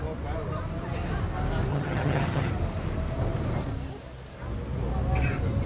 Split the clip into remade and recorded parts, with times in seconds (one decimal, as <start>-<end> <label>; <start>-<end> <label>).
0.0-1.7 recorded; 1.7-2.5 remade; 2.5-5.7 recorded